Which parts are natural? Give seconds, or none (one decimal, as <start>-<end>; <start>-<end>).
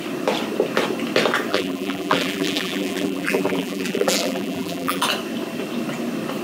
0.0-1.5; 5.0-6.4